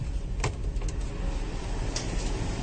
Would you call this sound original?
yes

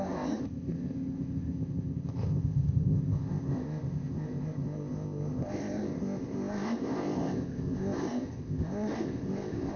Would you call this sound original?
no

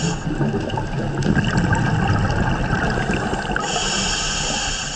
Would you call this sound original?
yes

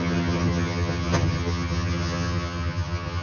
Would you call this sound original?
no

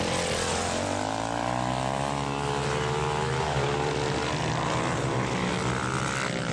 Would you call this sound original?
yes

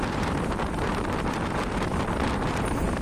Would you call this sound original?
no